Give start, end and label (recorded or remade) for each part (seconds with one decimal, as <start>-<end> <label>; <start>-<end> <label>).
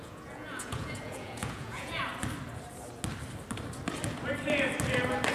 0.0-2.1 remade; 2.1-5.3 recorded